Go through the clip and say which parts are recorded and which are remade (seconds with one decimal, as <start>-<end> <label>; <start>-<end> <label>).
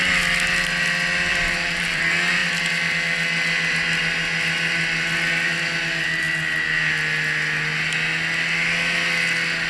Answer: 0.0-1.3 recorded; 1.3-2.0 remade; 2.0-9.7 recorded